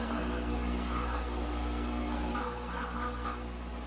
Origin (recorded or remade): remade